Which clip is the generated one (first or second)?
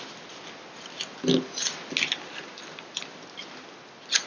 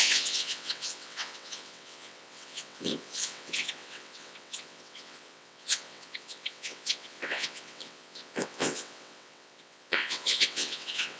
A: second